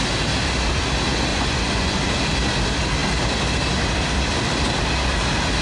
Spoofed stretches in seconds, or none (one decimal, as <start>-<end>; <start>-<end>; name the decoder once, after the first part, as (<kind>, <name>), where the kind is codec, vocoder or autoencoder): 1.3-2.0 (vocoder, Vocos)

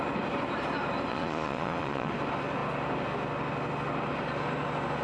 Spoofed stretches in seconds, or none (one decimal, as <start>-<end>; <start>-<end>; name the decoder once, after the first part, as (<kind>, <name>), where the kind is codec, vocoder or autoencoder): 1.1-2.1 (vocoder, Vocos)

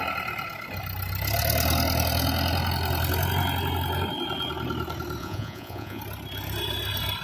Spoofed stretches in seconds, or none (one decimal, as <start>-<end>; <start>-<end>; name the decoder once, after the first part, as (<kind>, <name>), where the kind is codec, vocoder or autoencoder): 5.2-6.0 (vocoder, Vocos)

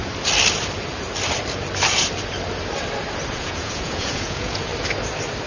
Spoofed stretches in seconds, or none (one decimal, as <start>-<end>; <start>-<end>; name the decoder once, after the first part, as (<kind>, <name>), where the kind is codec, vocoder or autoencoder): 3.3-4.7 (vocoder, Vocos)

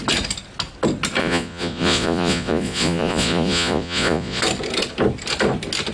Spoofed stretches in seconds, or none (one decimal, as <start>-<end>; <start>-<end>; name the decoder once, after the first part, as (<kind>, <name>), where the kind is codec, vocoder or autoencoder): 1.2-4.4 (vocoder, Vocos)

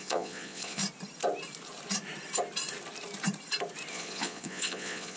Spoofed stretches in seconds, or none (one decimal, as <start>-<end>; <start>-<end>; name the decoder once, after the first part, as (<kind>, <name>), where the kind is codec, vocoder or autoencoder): 0.0-0.8 (vocoder, Vocos); 3.9-5.2

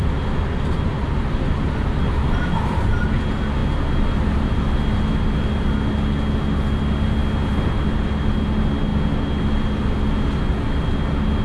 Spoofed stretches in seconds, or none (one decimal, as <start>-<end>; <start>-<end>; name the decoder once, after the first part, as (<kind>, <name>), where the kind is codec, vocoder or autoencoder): none

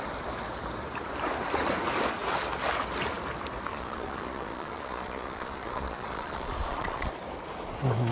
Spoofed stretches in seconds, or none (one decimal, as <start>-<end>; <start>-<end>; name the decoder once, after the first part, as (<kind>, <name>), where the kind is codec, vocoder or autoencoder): 3.7-7.1 (vocoder, Vocos)